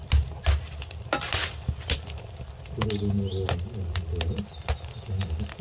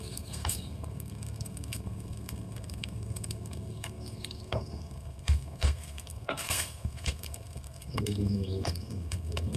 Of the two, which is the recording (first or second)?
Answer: first